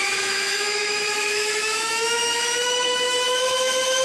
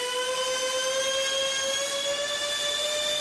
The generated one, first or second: first